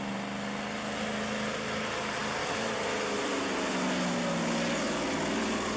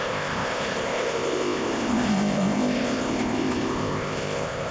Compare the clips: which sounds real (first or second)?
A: first